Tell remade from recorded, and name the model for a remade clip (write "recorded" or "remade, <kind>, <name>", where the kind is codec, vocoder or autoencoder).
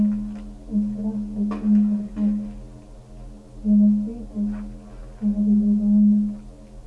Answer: recorded